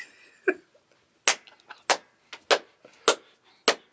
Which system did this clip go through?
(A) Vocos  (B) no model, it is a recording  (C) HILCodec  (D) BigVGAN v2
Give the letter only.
B